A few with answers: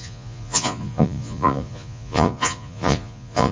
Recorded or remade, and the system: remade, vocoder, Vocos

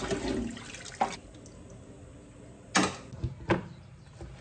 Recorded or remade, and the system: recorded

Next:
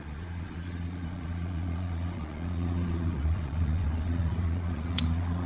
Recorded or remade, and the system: remade, vocoder, Vocos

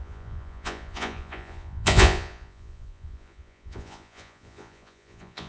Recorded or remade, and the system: remade, vocoder, Vocos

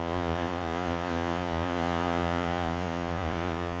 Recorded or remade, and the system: remade, vocoder, Vocos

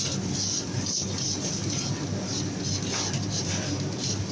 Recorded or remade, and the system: recorded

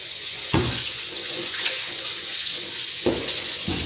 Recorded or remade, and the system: remade, vocoder, Vocos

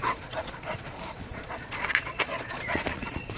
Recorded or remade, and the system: remade, vocoder, Vocos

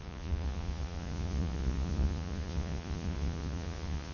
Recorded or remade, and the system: remade, vocoder, Vocos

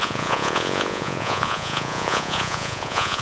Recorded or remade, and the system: remade, vocoder, Vocos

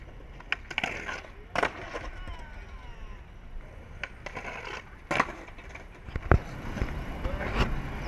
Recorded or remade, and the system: recorded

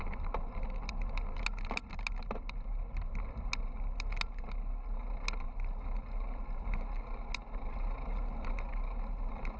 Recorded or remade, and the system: recorded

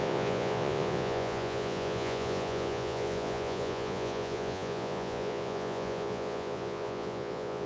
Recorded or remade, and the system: remade, vocoder, Vocos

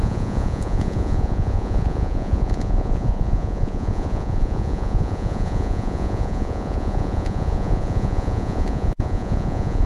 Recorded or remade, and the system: remade, vocoder, Vocos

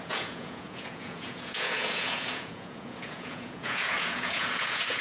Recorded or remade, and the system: remade, vocoder, Vocos